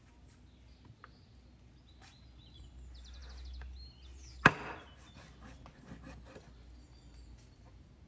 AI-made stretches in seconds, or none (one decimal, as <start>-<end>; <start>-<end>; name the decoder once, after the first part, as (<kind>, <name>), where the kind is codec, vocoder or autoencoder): none

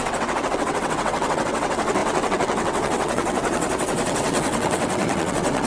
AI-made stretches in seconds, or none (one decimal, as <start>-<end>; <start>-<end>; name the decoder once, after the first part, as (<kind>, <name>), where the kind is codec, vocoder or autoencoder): 0.0-5.7 (vocoder, WaveNeXt)

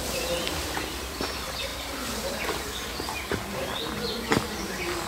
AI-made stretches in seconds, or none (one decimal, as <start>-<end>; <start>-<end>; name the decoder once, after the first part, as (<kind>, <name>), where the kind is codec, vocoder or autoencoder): none